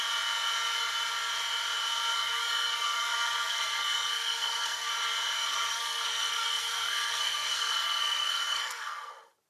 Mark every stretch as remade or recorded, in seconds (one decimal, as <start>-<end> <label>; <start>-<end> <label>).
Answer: 0.0-2.1 recorded; 2.1-4.9 remade; 4.9-5.5 recorded; 5.5-9.1 remade; 9.1-9.5 recorded